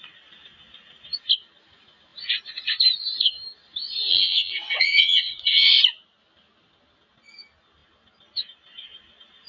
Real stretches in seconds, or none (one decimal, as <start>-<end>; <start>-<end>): 0.0-4.1; 5.8-9.5